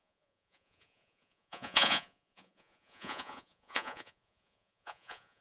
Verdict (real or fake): fake